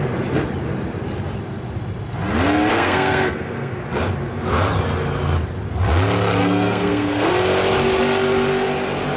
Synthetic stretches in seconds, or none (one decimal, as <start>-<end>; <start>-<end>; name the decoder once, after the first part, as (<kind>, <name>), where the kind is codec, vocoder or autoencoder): 2.7-3.8 (codec, SNAC); 6.4-7.3

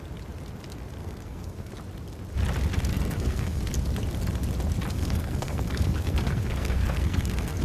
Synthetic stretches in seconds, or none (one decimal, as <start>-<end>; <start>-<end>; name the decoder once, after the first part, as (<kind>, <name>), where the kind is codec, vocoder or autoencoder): 1.0-1.7 (codec, SNAC); 2.9-3.6; 4.9-7.6

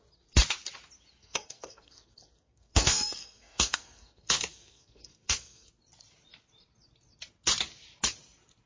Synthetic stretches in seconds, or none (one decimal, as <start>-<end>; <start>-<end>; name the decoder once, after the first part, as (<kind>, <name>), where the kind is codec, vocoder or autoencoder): 1.2-5.7 (codec, SNAC)

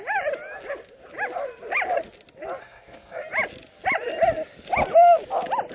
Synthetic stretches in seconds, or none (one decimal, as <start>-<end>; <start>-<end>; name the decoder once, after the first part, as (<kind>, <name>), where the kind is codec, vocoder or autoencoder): 2.6-3.2 (codec, SNAC)